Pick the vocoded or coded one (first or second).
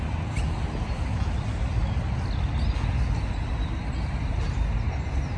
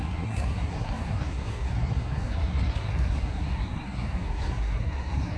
second